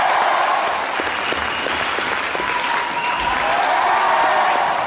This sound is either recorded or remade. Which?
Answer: recorded